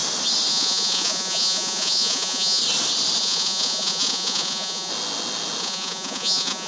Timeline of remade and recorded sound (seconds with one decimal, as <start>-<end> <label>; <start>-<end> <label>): 0.0-0.5 recorded; 0.5-2.6 remade; 2.6-3.2 recorded; 3.2-4.9 remade; 4.9-5.6 recorded; 5.6-6.7 remade